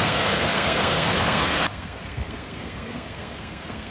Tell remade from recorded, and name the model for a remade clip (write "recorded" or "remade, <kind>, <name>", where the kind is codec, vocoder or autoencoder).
remade, codec, SNAC